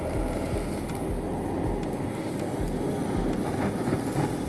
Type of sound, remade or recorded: recorded